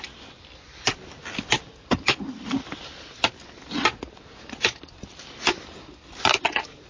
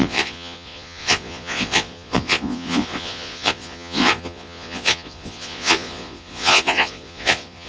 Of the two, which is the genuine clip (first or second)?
first